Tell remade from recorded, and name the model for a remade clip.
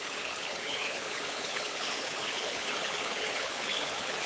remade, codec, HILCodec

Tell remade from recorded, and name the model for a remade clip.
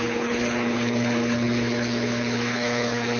remade, codec, HILCodec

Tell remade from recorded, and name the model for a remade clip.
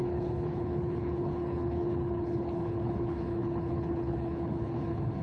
remade, codec, HILCodec